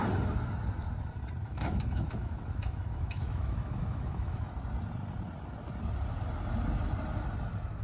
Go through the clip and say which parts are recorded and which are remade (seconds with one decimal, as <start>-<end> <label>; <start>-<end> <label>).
0.0-1.4 recorded; 1.4-4.5 remade; 4.5-7.8 recorded